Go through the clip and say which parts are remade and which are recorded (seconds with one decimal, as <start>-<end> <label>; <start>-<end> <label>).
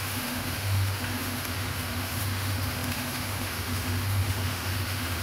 0.0-5.2 remade